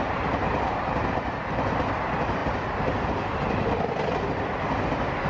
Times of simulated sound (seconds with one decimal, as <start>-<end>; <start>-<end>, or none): none